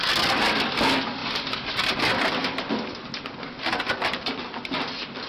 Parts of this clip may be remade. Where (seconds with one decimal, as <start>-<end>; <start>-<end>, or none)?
1.2-1.7